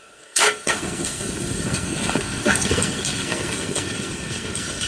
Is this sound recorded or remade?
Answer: remade